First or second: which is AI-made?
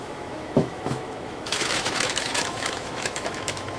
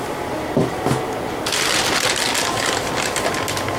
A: first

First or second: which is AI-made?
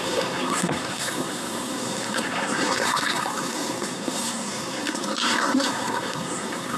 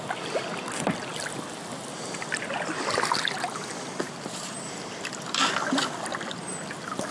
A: first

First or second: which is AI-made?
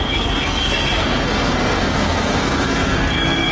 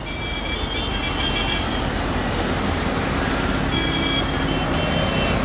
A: first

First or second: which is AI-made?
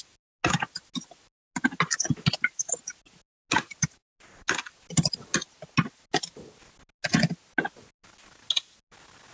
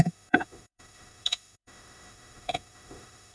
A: second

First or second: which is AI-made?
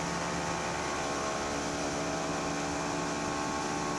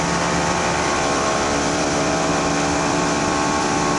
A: second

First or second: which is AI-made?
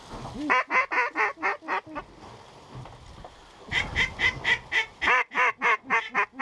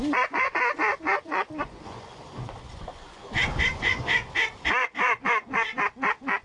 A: second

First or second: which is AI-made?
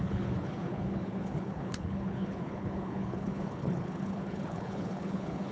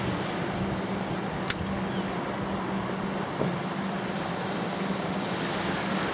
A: first